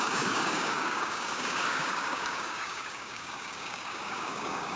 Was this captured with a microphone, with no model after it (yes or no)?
no